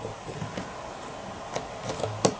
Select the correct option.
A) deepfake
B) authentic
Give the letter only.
B